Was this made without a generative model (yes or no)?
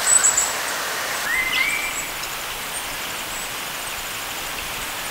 yes